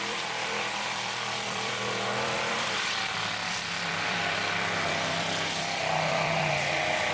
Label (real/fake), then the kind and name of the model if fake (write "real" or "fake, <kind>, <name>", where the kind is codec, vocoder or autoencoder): fake, vocoder, BigVGAN v2